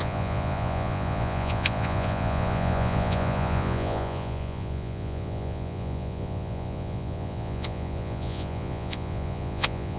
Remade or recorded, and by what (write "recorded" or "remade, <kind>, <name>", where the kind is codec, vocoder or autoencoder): remade, vocoder, Vocos